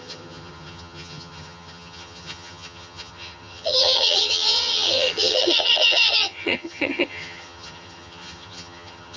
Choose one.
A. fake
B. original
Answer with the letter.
A